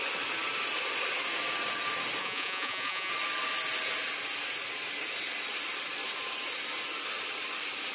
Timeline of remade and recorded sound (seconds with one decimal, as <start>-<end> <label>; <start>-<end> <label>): 0.0-2.2 recorded; 2.2-3.1 remade; 3.1-7.9 recorded